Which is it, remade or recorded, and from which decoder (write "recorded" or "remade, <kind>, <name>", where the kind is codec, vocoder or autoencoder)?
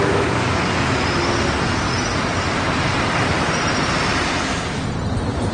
recorded